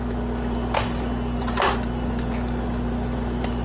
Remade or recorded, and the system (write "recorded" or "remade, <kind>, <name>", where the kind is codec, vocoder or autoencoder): recorded